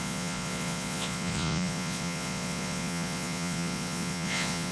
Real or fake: fake